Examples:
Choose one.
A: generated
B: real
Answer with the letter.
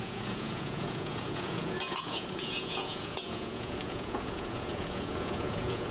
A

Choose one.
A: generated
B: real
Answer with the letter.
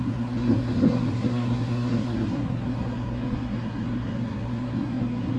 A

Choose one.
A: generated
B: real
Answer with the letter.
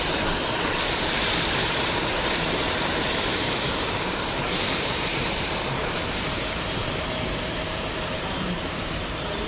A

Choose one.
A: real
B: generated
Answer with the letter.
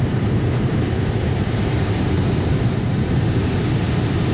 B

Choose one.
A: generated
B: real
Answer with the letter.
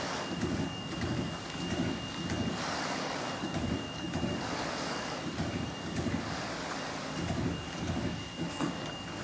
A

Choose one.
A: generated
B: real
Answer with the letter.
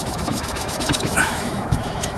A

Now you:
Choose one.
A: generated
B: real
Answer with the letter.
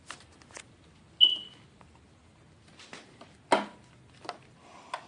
B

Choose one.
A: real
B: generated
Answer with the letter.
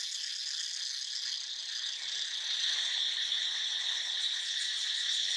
A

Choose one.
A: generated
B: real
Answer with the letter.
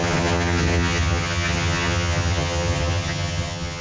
A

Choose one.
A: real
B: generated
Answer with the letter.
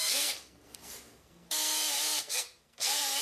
B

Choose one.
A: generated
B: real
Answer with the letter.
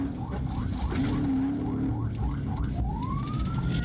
B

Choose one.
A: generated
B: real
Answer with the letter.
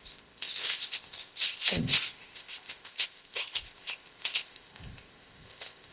A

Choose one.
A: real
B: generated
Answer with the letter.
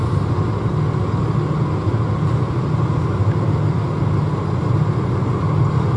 A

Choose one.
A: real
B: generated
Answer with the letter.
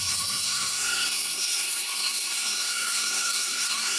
B